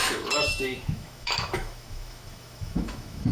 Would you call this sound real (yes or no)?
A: no